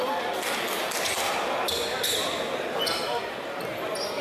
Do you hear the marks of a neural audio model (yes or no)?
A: no